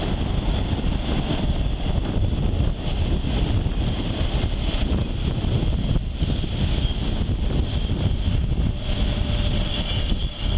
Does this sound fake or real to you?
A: real